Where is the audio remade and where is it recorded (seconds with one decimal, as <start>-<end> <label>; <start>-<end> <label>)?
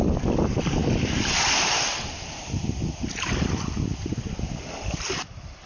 0.0-5.7 recorded